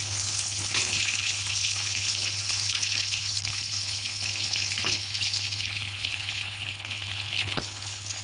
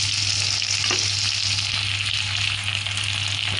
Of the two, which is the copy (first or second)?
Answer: first